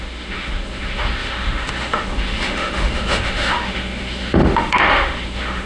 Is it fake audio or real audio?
fake